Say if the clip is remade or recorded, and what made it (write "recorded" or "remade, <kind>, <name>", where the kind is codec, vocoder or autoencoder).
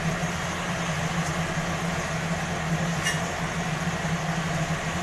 recorded